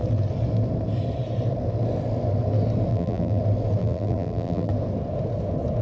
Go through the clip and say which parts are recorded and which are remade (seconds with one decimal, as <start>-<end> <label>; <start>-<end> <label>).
0.0-2.9 recorded; 2.9-3.4 remade; 3.4-3.8 recorded; 3.8-4.7 remade; 4.7-5.8 recorded